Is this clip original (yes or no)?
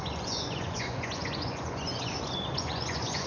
no